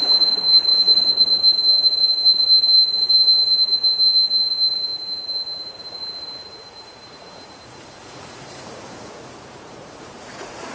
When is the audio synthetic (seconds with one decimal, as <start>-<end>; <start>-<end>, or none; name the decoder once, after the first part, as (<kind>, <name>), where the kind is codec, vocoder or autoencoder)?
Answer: 0.0-10.7 (vocoder, Vocos)

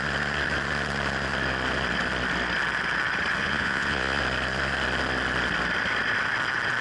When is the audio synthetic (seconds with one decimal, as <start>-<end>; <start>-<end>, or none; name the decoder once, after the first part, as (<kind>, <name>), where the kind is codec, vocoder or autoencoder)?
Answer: 3.4-4.2 (vocoder, Vocos)